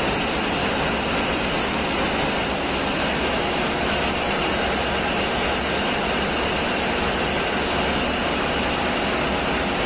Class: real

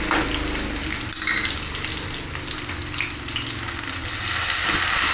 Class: real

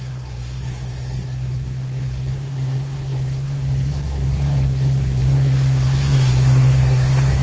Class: fake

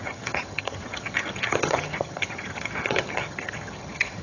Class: fake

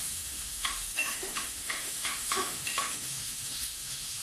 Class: fake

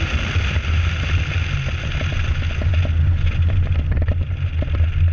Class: real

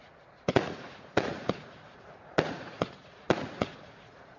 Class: fake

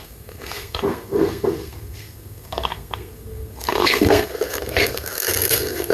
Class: fake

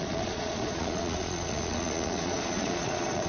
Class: fake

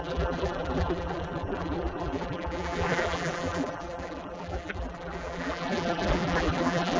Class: fake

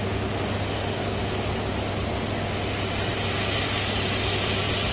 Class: real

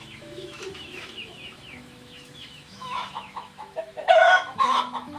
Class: fake